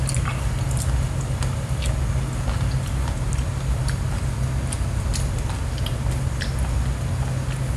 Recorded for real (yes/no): yes